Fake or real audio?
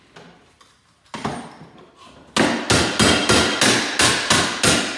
real